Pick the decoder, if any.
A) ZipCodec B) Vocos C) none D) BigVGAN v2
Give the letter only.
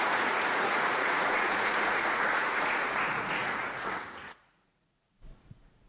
B